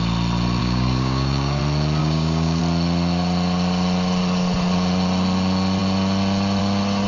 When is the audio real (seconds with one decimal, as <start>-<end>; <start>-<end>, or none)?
0.0-0.6; 1.6-2.0; 2.6-7.1